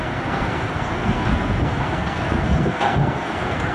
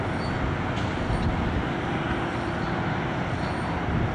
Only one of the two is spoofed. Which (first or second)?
first